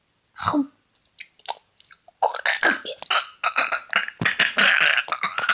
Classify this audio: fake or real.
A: real